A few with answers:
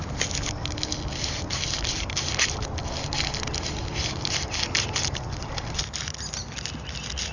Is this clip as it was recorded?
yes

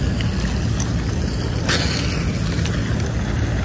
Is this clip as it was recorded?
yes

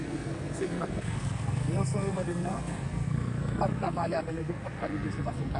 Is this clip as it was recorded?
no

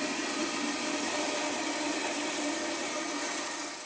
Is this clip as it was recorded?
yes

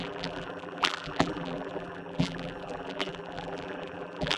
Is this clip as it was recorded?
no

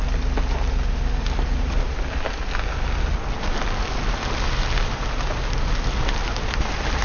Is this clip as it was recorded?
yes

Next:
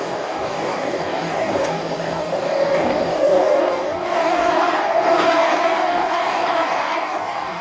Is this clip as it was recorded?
no